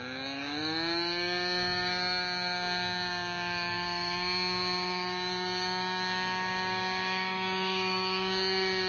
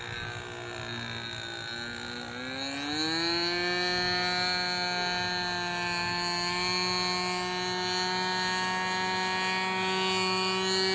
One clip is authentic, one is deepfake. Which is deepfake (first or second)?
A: first